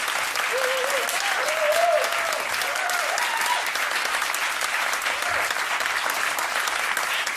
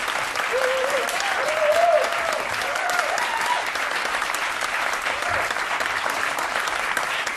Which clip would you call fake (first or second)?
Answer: second